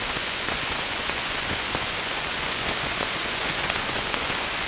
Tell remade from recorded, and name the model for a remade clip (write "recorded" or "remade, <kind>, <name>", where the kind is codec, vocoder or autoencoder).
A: remade, vocoder, Vocos